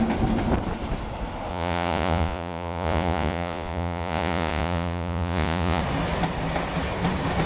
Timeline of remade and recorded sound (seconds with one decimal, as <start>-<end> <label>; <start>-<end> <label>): 0.0-1.5 recorded; 1.5-5.8 remade; 5.8-7.5 recorded